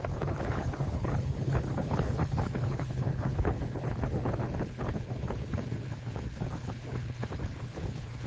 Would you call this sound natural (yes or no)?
no